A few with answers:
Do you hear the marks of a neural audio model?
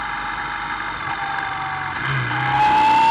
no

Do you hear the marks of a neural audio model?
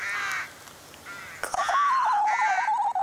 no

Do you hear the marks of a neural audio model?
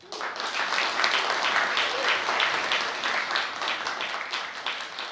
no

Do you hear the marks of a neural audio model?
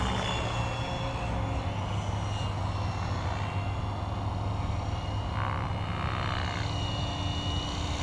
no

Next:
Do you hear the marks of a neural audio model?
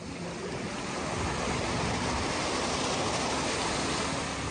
no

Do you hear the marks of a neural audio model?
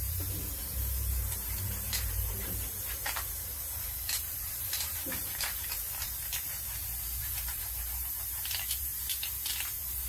yes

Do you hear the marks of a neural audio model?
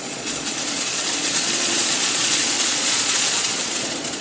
yes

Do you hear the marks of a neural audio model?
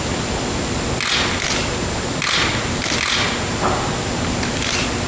no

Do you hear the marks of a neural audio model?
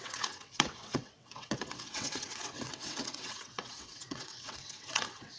yes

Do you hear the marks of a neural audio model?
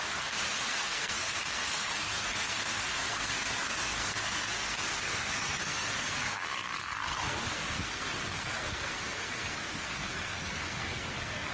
yes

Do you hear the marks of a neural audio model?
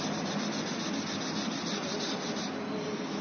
no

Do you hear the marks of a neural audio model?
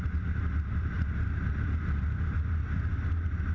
no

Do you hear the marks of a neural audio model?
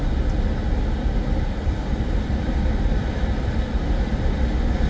no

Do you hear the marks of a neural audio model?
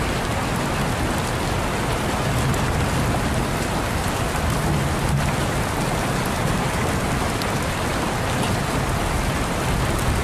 no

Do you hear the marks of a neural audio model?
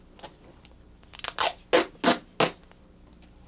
no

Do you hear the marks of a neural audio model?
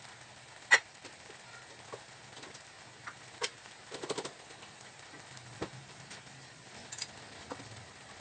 no